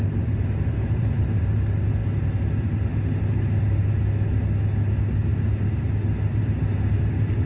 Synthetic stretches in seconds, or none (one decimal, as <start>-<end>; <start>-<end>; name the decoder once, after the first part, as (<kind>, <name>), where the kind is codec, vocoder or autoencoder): none